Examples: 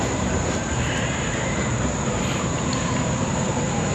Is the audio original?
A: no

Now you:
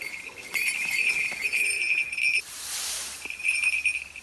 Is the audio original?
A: no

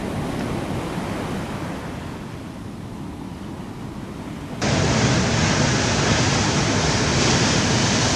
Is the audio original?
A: yes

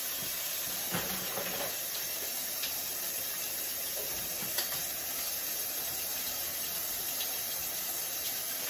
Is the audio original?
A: no